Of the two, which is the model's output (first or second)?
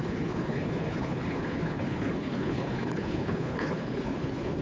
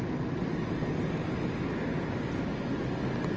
first